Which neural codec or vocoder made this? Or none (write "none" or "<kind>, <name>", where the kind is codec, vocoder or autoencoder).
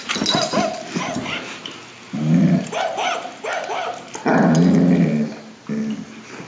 none